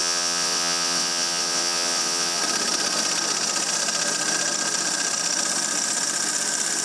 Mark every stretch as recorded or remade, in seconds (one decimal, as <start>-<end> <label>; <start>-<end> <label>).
0.0-2.4 remade; 2.4-6.8 recorded